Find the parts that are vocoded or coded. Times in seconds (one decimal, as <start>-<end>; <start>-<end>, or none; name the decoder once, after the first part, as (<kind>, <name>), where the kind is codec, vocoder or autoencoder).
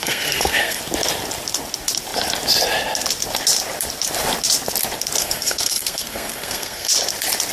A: 0.0-0.8 (codec, SNAC); 5.2-6.9